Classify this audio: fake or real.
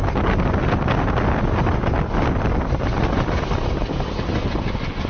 real